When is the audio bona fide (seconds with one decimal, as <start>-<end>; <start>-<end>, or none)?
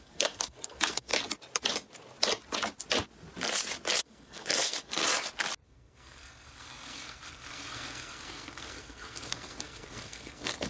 1.1-4.0; 5.0-5.7